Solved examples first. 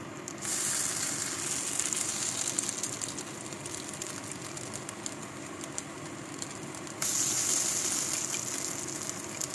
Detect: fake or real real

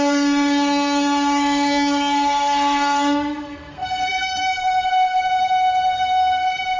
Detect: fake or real fake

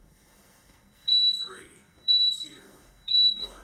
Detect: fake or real fake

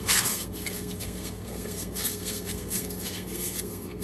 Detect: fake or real fake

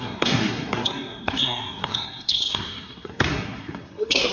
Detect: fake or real fake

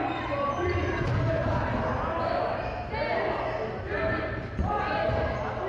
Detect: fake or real real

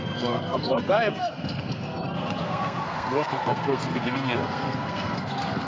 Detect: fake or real fake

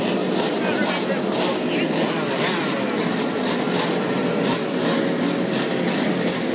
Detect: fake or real real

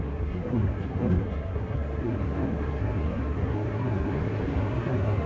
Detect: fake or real fake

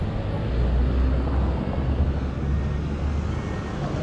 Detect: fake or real real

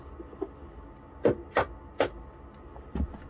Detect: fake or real real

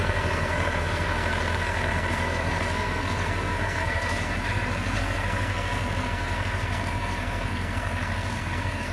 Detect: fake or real fake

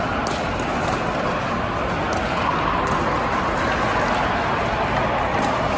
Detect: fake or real real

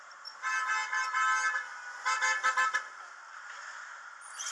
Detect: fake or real real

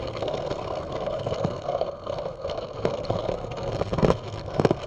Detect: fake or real fake